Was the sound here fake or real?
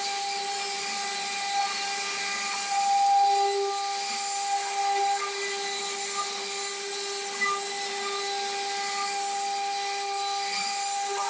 real